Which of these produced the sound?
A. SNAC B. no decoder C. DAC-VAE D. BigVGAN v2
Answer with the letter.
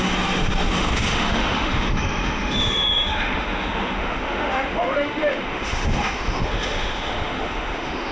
C